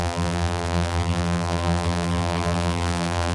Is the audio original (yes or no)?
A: no